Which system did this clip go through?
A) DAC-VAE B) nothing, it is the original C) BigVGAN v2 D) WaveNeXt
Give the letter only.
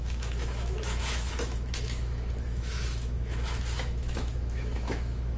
A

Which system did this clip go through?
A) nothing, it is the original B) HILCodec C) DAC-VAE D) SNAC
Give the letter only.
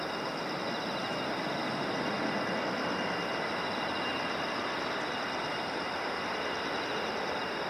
A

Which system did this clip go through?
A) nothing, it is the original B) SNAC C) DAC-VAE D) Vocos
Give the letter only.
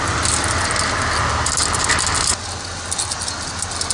A